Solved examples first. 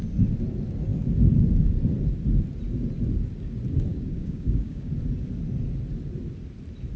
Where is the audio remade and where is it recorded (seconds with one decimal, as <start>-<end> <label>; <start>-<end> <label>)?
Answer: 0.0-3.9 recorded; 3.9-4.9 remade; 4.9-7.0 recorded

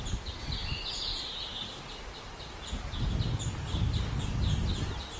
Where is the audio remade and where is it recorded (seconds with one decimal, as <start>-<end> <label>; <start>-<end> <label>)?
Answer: 0.0-5.2 recorded

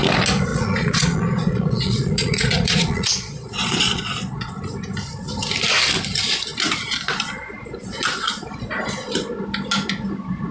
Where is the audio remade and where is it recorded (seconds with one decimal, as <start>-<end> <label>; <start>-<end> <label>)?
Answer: 0.0-0.5 recorded; 0.5-4.5 remade; 4.5-10.5 recorded

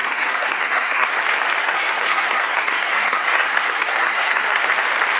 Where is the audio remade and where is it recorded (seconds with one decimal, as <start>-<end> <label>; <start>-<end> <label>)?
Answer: 0.0-1.1 remade; 1.1-1.6 recorded; 1.6-4.7 remade; 4.7-5.2 recorded